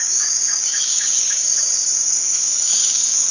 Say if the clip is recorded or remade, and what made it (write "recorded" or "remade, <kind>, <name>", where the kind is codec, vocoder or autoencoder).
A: remade, codec, DAC